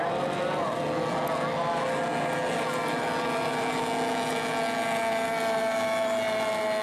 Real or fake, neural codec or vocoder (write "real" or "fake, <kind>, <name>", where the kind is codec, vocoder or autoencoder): real